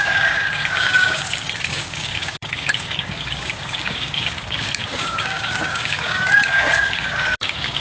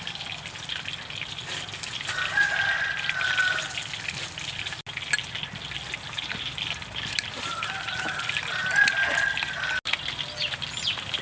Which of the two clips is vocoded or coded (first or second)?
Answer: first